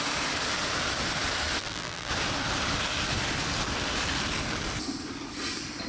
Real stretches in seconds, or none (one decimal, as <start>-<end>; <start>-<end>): 0.0-1.6; 2.1-5.9